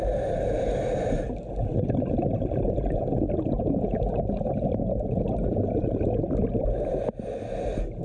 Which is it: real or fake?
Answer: real